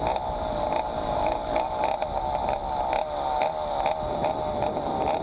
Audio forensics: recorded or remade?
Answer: recorded